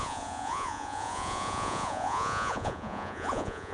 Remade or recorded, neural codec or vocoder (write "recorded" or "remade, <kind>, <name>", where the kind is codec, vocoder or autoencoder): remade, vocoder, Vocos